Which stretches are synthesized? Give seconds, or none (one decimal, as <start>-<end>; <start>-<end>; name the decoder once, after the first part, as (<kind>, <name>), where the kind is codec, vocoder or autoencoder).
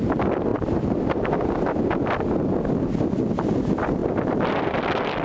none